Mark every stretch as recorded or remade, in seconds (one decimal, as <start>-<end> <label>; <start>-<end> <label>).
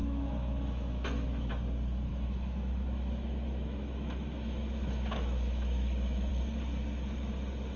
0.0-1.5 remade; 1.5-2.1 recorded; 2.1-6.3 remade; 6.3-7.8 recorded